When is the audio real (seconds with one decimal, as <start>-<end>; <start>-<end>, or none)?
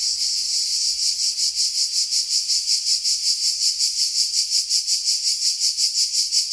0.0-6.5